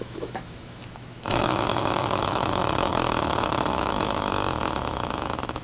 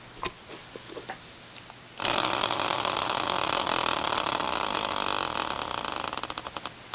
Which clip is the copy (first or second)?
first